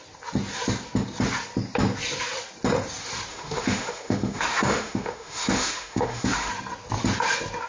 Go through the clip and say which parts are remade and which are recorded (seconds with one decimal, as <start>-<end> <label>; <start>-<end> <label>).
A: 0.0-3.3 recorded; 3.3-6.5 remade; 6.5-7.7 recorded